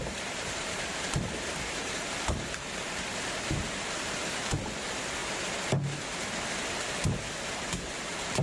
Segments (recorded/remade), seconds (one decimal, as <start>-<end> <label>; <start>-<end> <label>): 0.0-5.2 remade; 5.2-6.6 recorded; 6.6-8.4 remade